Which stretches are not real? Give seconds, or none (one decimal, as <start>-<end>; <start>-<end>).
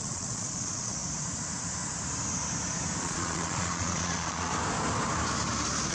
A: 0.0-1.0; 3.0-4.5